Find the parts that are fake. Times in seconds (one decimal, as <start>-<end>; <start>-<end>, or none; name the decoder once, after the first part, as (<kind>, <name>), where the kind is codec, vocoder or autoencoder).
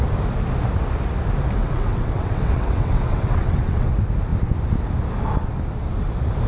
1.6-3.9 (vocoder, WaveNeXt)